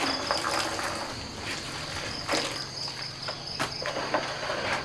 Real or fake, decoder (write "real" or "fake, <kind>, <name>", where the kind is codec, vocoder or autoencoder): real